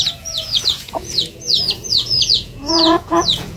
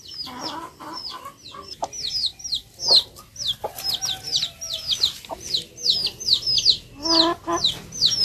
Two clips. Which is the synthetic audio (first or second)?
first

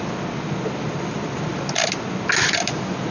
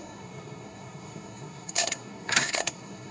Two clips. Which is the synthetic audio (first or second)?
second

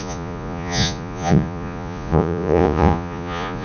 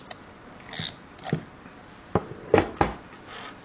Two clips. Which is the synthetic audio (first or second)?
first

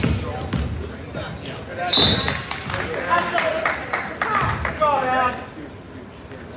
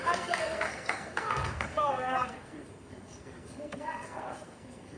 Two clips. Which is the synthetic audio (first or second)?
second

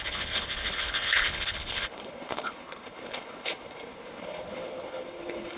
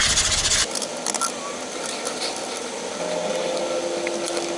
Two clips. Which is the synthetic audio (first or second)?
first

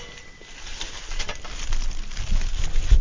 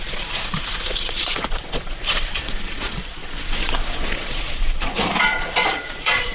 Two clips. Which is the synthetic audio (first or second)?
second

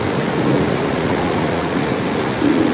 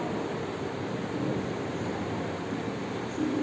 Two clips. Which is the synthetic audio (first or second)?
first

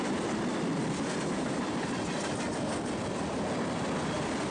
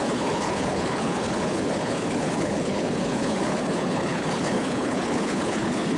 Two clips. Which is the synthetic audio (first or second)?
second